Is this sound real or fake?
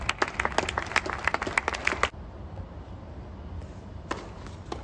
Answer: real